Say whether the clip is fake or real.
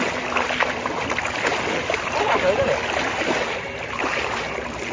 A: real